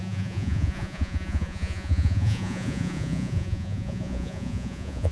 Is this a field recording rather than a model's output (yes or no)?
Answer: no